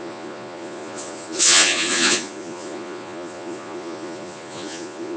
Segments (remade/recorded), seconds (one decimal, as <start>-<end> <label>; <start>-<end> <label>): 0.0-5.2 remade